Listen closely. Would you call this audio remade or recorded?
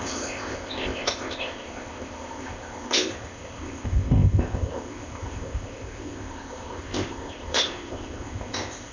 remade